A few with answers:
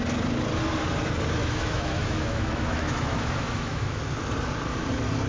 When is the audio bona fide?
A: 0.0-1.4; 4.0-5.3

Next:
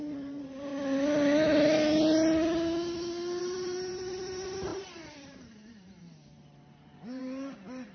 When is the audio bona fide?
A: 0.7-3.4

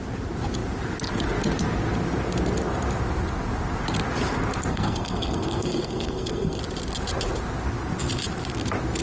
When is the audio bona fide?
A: 0.0-4.7; 6.6-9.0

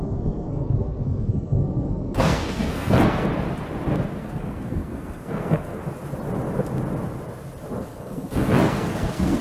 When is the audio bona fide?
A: 3.3-4.2; 5.8-7.8

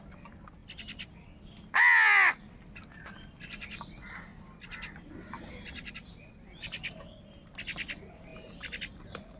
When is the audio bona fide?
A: 0.0-9.4

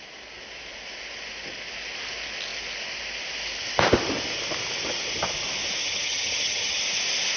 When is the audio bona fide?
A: 0.0-5.8; 6.8-7.4